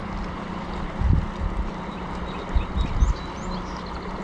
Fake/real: real